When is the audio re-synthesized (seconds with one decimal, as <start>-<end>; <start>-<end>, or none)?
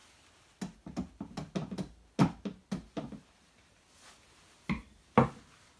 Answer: none